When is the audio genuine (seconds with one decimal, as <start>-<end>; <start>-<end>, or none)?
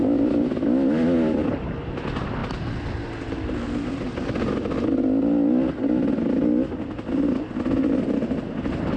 0.0-9.0